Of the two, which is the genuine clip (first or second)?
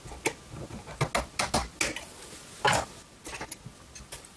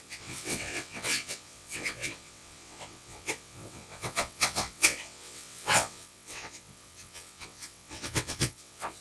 first